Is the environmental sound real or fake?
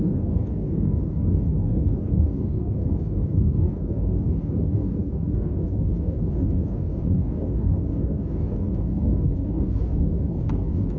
fake